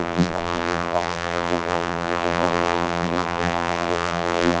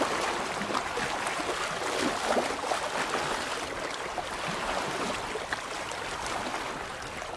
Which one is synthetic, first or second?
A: first